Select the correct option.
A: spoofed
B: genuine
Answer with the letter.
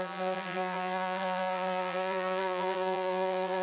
A